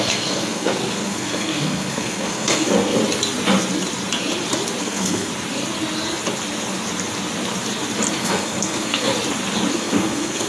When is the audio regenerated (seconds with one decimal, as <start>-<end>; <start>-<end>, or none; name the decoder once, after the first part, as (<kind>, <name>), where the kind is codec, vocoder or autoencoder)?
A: 0.0-3.0 (codec, SNAC); 4.8-5.3; 8.2-9.1; 9.7-10.5